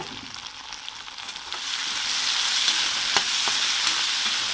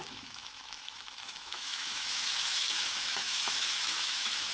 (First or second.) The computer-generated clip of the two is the second